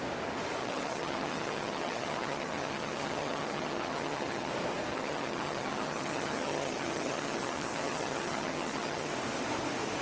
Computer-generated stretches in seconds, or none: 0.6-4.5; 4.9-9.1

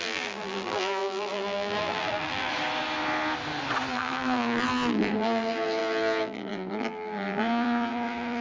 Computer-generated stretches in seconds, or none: 0.0-2.5; 3.9-8.4

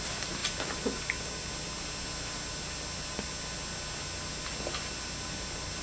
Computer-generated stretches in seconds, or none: none

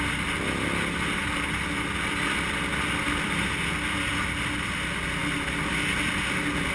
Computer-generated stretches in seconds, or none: none

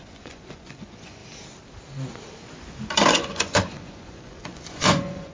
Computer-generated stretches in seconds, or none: 0.0-1.2; 3.1-5.3

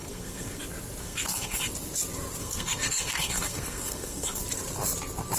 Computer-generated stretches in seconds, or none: 0.0-0.6; 1.0-1.7; 2.4-4.4

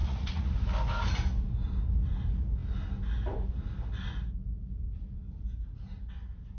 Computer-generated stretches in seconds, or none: 0.0-0.5